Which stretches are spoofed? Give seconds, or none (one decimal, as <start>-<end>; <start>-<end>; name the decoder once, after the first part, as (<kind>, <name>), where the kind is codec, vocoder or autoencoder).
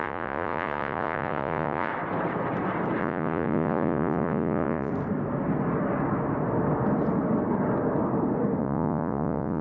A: 0.0-1.9 (vocoder, Vocos); 3.0-4.9; 8.6-9.6